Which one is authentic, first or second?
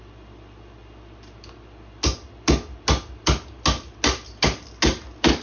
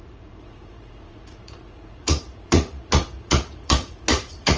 first